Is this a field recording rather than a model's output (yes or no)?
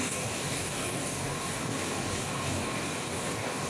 no